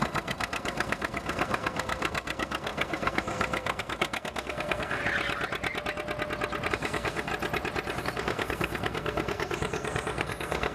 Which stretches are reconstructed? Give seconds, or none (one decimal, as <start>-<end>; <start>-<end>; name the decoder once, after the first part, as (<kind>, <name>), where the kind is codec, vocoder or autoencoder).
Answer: 0.0-5.0 (codec, SNAC); 6.7-7.3; 8.0-10.7

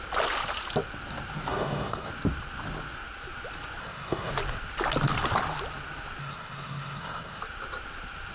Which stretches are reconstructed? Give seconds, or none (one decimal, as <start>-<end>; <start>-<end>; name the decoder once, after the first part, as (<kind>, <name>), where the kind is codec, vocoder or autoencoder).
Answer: 1.5-2.1 (codec, SNAC); 3.8-4.3; 6.2-7.4

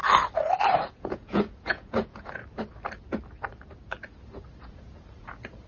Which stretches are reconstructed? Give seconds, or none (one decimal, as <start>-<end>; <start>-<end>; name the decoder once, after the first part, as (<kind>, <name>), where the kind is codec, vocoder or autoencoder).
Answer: 0.9-2.4 (vocoder, Vocos); 4.6-5.7